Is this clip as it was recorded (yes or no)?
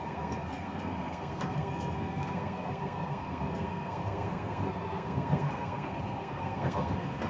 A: no